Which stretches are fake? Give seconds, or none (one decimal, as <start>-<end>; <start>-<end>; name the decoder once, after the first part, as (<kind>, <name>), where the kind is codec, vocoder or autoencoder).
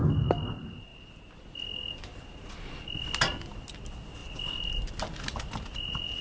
none